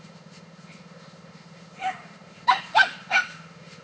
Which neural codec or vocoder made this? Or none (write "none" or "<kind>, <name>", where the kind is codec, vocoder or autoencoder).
autoencoder, DAC-VAE